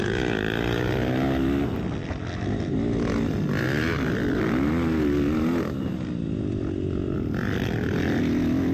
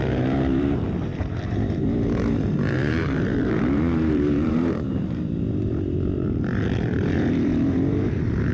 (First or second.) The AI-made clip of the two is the second